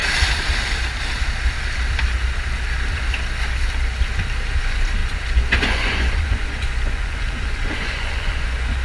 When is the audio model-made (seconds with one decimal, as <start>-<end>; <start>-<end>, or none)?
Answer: 4.6-8.8